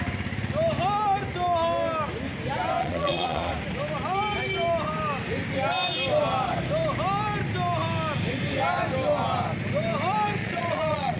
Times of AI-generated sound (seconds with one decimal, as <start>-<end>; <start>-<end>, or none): 2.8-3.5; 10.4-11.2